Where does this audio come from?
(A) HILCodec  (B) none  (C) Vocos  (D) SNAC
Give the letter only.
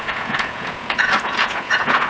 C